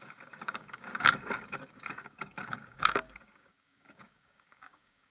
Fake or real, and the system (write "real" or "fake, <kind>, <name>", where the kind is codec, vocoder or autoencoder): fake, codec, DAC